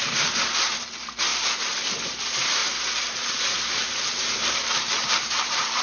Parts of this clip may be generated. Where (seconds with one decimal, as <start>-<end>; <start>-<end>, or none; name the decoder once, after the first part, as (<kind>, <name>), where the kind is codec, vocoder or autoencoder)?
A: 2.6-3.4 (vocoder, BigVGAN v2); 3.8-5.8